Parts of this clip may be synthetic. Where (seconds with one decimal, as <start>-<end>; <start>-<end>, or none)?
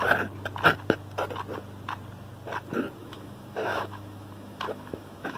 3.0-5.4